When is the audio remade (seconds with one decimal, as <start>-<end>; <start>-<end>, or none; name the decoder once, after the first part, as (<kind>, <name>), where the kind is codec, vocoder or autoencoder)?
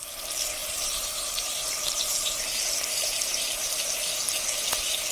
0.6-3.7 (vocoder, BigVGAN v2)